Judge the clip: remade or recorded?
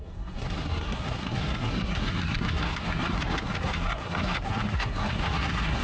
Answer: remade